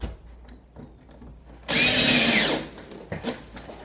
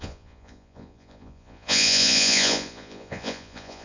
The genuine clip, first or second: first